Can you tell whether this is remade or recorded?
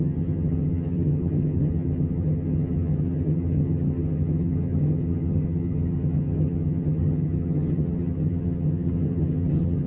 remade